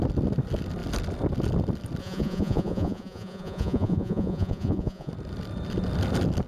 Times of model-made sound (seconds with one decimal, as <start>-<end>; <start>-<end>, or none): 2.0-5.1

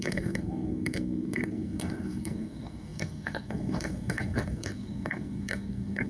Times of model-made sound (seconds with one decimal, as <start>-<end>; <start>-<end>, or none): 0.0-6.1

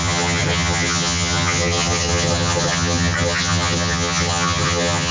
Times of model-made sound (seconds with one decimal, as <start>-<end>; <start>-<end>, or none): 0.0-5.1

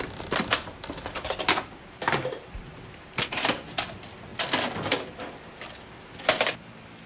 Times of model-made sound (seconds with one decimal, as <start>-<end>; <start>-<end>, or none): none

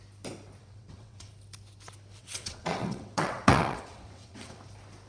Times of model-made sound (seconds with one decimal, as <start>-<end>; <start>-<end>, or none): 0.6-1.3; 2.2-4.6

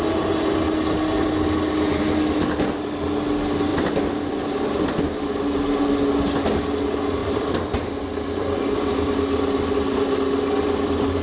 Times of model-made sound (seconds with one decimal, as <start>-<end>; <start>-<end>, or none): 3.7-5.0; 7.2-9.7

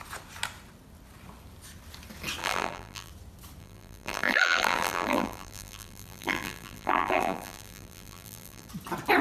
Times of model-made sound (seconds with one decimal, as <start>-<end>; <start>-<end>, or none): 2.4-3.1; 3.6-8.7